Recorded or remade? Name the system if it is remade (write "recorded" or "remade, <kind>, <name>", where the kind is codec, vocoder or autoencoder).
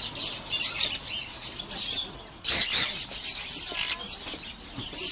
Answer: recorded